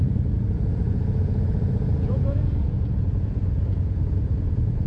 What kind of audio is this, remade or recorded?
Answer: remade